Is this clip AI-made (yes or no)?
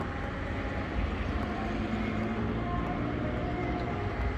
no